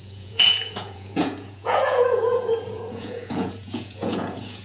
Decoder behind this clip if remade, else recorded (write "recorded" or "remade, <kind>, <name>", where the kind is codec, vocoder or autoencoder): remade, vocoder, Vocos